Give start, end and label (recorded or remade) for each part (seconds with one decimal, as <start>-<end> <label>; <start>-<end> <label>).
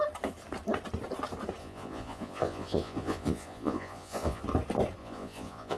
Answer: 0.0-1.6 recorded; 1.6-4.4 remade; 4.4-5.0 recorded; 5.0-5.8 remade